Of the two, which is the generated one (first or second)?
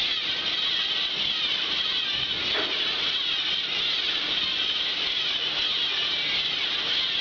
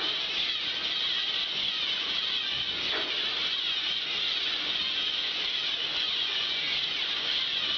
second